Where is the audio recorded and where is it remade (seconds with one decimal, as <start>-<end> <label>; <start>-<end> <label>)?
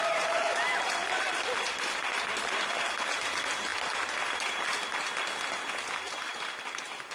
0.0-1.0 recorded; 1.0-1.8 remade; 1.8-3.7 recorded; 3.7-4.2 remade; 4.2-7.1 recorded